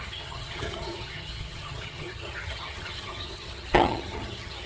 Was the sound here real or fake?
fake